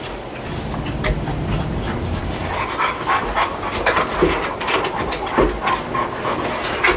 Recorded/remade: recorded